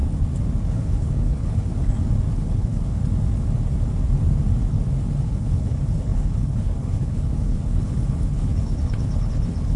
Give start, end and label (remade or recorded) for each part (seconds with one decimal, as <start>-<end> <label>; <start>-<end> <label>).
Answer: 0.0-0.7 recorded; 0.7-1.7 remade; 1.7-2.4 recorded; 2.4-3.0 remade; 3.0-5.2 recorded; 5.2-9.8 remade